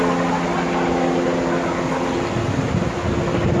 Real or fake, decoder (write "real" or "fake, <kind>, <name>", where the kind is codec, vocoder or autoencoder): real